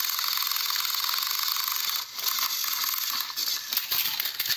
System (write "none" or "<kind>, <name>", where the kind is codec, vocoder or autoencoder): none